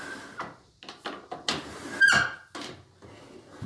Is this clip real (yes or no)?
yes